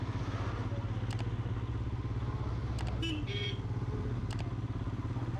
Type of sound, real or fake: real